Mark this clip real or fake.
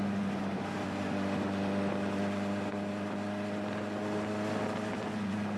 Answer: real